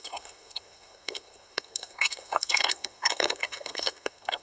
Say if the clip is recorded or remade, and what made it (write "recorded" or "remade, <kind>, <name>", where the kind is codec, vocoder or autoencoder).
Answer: remade, codec, SNAC